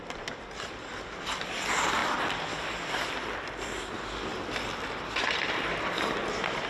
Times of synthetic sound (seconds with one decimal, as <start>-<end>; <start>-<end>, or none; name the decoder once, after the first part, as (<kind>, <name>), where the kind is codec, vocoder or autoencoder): none